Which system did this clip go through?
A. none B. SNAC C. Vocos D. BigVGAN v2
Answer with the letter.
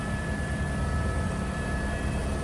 D